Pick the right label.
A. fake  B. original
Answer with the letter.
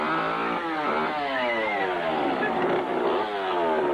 B